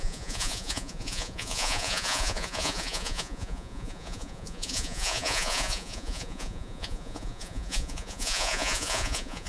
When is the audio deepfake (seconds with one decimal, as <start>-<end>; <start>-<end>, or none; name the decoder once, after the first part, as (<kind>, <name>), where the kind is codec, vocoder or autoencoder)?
0.0-9.5 (vocoder, Vocos)